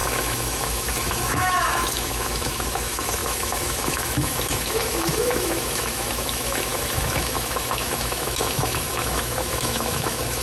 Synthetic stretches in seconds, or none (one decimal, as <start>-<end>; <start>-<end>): 0.0-10.4